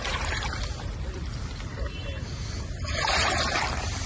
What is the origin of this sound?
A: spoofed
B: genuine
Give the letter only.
A